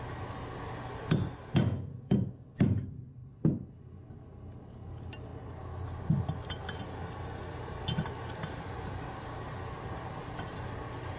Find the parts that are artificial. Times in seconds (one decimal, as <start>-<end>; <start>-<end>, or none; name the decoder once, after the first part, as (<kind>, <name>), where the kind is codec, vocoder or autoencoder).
none